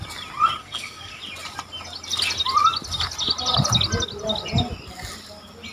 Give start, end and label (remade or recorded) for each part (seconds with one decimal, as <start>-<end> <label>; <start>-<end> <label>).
0.0-0.6 recorded; 0.6-1.2 remade; 1.2-5.7 recorded